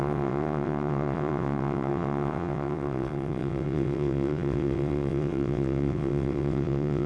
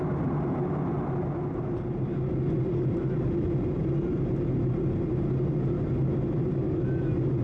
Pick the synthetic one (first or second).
first